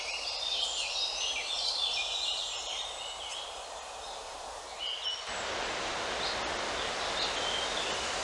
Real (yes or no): yes